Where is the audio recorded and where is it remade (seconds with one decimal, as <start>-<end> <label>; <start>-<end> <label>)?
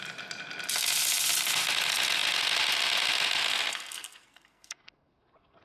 0.0-3.7 recorded; 3.7-5.6 remade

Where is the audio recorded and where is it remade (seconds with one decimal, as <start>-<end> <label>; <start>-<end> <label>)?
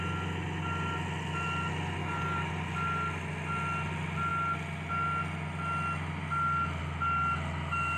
0.0-2.0 recorded; 2.0-2.5 remade; 2.5-8.0 recorded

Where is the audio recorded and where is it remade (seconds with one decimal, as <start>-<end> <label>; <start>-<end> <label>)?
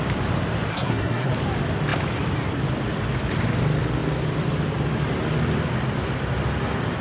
0.0-0.7 recorded; 0.7-1.3 remade; 1.3-7.0 recorded